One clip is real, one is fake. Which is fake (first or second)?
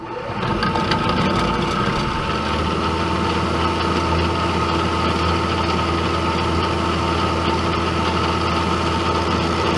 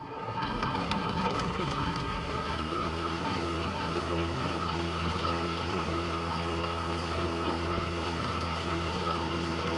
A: second